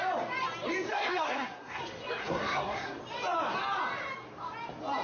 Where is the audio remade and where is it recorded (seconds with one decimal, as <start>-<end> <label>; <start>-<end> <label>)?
0.0-0.9 recorded; 0.9-1.8 remade; 1.8-2.2 recorded; 2.2-3.0 remade; 3.0-5.0 recorded